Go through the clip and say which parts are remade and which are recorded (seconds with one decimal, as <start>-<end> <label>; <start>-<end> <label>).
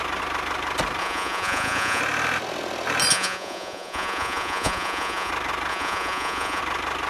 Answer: 0.0-1.0 recorded; 1.0-2.0 remade; 2.0-3.1 recorded; 3.1-5.3 remade; 5.3-5.7 recorded; 5.7-6.6 remade; 6.6-7.1 recorded